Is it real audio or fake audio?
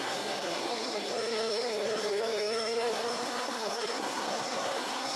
fake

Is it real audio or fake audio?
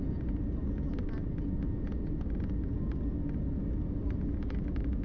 real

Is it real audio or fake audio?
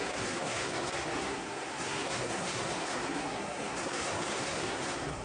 fake